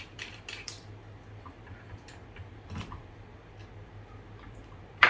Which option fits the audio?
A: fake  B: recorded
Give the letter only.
A